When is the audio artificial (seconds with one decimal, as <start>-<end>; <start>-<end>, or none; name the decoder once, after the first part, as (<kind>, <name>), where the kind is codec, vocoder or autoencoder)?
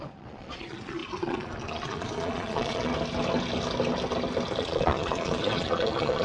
0.0-2.9 (vocoder, Vocos); 4.6-6.2